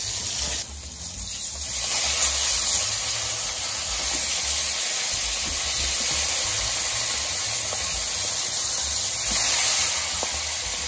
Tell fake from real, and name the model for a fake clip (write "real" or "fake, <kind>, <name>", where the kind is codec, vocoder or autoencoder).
real